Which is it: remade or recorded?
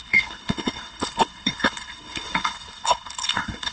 remade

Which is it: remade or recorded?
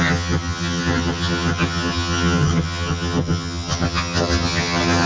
remade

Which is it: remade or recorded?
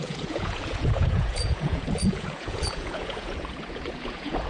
remade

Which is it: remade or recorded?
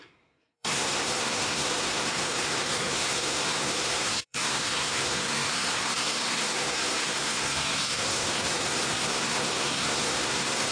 remade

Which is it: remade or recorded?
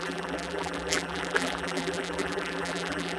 remade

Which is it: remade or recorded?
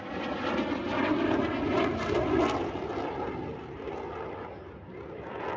recorded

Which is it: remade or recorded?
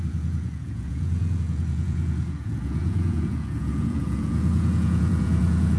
remade